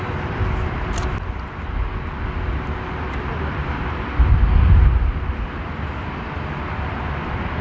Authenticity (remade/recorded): recorded